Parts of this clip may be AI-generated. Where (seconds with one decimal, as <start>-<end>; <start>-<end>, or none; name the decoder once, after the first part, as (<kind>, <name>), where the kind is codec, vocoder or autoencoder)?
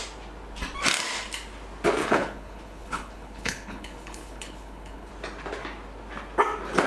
2.0-5.1 (codec, HILCodec)